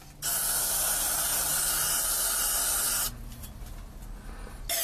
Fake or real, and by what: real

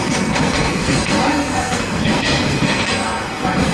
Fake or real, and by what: fake, codec, SNAC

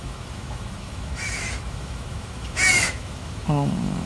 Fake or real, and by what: fake, autoencoder, DAC-VAE